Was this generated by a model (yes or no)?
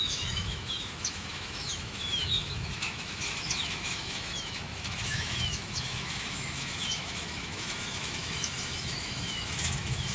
yes